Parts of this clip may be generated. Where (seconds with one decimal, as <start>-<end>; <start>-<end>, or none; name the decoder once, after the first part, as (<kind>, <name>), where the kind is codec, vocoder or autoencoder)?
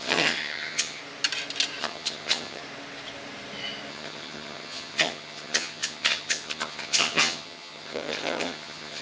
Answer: 0.0-1.0 (vocoder, HiFi-GAN); 1.8-2.6; 3.9-9.0